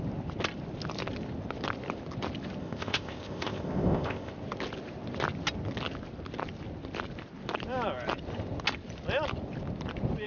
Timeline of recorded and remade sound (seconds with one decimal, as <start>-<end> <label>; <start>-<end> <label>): 0.0-2.6 recorded; 2.6-4.3 remade; 4.3-10.3 recorded